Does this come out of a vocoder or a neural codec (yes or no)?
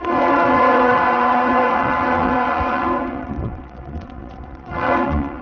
yes